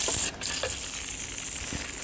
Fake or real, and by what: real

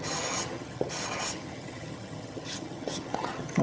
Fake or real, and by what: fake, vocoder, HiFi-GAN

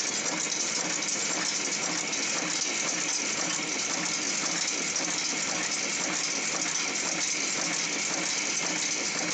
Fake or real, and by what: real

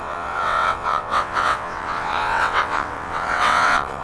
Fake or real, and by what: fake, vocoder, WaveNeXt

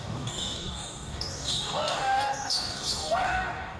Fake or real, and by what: fake, codec, DAC